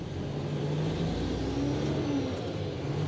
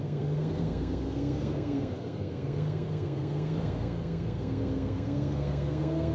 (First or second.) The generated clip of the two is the second